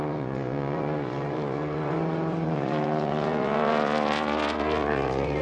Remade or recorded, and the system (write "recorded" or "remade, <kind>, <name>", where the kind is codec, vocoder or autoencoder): remade, vocoder, Vocos